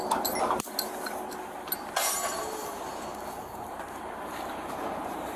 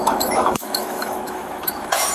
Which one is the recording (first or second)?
first